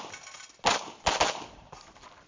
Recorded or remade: recorded